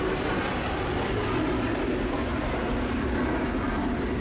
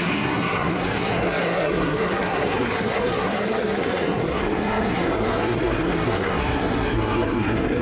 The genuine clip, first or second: first